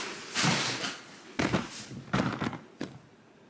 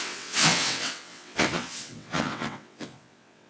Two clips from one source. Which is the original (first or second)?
first